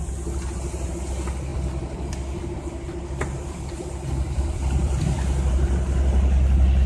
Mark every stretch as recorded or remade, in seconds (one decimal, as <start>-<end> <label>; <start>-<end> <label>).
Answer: 0.0-1.5 recorded; 1.5-5.5 remade; 5.5-6.9 recorded